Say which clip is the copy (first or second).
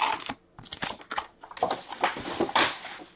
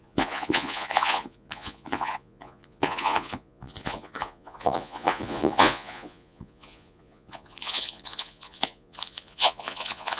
second